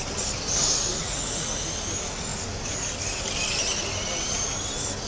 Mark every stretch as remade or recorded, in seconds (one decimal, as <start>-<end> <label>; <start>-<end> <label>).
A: 0.0-1.0 recorded; 1.0-1.5 remade; 1.5-5.1 recorded